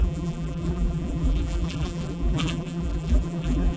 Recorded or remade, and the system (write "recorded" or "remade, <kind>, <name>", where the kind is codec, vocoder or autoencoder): remade, vocoder, BigVGAN v2